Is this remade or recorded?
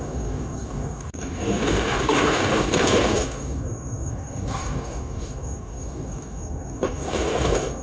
remade